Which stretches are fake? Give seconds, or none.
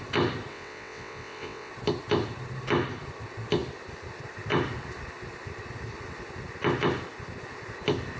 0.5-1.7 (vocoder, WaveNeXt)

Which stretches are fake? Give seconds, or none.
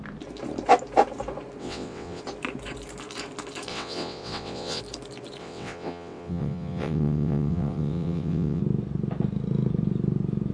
1.6-2.2 (vocoder, WaveNeXt); 3.7-4.8; 5.4-8.6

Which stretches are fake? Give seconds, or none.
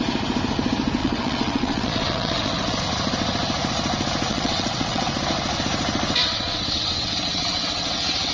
1.0-2.8 (vocoder, WaveNeXt); 4.3-5.1; 6.2-8.3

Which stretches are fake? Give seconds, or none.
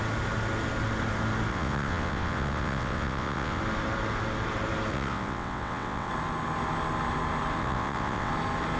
1.5-3.6 (vocoder, WaveNeXt); 4.9-6.1; 7.6-8.3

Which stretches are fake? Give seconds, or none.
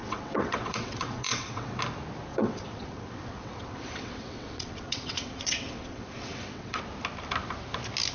0.0-1.8 (vocoder, WaveNeXt); 2.3-6.8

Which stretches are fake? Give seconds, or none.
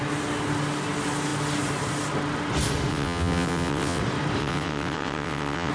2.9-4.0 (vocoder, WaveNeXt); 4.4-5.7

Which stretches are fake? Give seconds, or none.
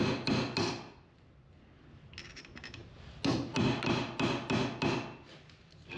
none